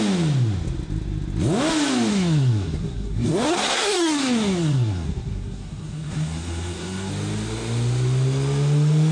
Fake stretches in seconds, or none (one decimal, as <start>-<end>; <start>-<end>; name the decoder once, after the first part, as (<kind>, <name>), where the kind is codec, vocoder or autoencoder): 2.1-7.1 (codec, SNAC)